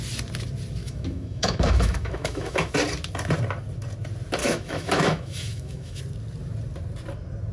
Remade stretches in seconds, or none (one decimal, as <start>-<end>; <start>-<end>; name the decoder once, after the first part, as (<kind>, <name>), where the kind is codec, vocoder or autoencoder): 0.8-2.7 (autoencoder, DAC-VAE); 4.4-6.0